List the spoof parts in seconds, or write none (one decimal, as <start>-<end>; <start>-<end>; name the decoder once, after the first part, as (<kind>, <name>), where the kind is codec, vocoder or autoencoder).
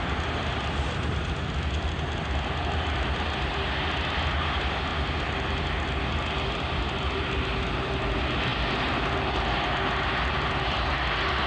none